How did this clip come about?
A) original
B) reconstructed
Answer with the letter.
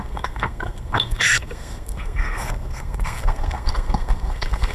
B